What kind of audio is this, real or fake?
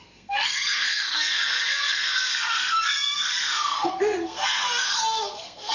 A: fake